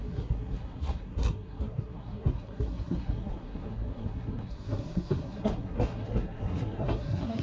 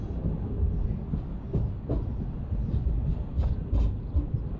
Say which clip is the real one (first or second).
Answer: second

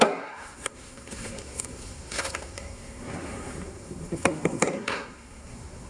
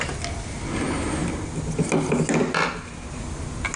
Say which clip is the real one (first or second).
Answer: second